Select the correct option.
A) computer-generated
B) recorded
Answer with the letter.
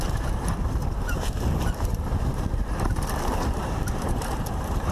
A